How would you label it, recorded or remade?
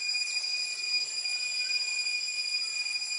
recorded